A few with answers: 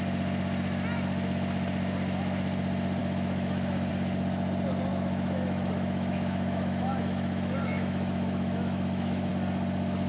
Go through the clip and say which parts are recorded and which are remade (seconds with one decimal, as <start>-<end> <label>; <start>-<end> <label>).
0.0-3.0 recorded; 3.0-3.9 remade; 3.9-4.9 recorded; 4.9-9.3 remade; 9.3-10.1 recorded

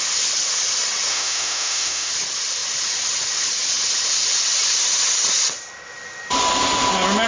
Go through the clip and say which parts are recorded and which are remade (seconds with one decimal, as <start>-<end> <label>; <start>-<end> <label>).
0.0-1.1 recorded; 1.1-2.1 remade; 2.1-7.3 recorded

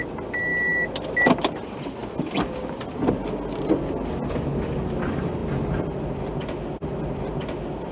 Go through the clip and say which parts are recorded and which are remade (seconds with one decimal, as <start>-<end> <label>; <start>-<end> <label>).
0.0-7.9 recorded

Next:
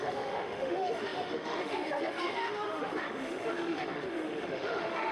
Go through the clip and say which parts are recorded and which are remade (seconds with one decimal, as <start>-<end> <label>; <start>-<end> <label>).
0.0-5.1 remade